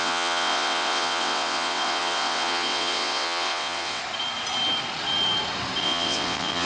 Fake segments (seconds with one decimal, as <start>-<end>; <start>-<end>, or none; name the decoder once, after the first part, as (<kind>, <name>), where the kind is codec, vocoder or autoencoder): 0.0-4.0 (vocoder, WaveNeXt); 5.8-6.7